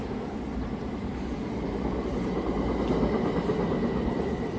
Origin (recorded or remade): recorded